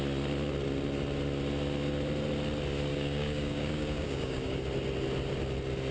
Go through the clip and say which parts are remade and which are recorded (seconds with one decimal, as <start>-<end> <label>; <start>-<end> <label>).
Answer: 0.0-2.9 recorded; 2.9-4.6 remade; 4.6-5.9 recorded